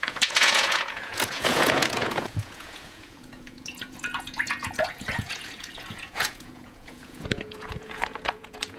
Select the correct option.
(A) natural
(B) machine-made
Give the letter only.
B